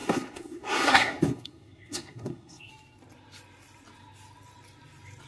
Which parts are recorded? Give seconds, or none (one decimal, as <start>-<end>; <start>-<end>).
2.7-5.3

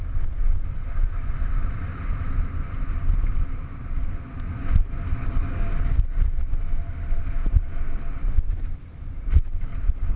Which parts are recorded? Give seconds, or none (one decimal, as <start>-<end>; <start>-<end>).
0.0-5.2; 5.7-10.2